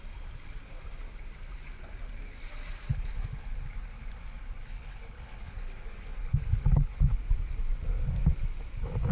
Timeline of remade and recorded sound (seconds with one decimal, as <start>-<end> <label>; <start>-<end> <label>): 0.0-2.9 recorded; 2.9-7.2 remade; 7.2-9.1 recorded